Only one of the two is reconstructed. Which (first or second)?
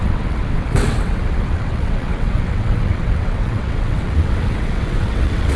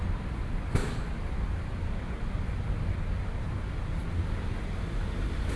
first